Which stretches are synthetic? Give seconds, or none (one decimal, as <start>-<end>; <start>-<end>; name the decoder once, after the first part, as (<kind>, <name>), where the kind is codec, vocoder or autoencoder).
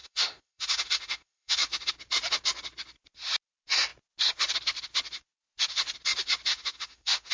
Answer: 0.0-1.9 (autoencoder, DAC-VAE); 6.5-7.3